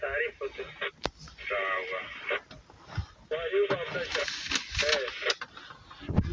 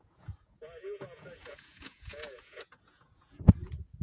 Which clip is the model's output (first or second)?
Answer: second